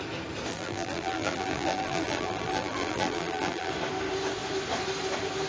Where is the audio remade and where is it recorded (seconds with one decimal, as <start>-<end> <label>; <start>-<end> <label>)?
0.0-0.5 recorded; 0.5-3.7 remade; 3.7-5.5 recorded